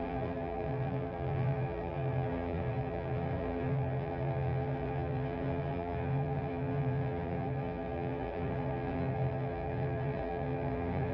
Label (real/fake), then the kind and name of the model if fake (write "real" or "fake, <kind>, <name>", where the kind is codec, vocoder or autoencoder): fake, vocoder, BigVGAN v2